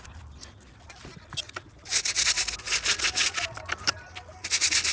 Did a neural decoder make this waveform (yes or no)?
no